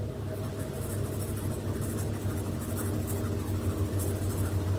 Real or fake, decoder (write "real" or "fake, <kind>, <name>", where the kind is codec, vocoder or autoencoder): real